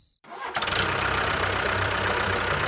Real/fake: fake